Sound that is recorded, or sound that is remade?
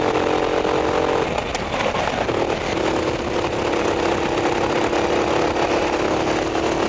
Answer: recorded